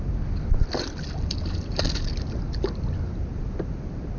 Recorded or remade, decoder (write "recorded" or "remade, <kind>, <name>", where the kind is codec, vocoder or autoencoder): recorded